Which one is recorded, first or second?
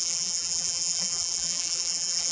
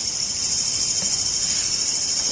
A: second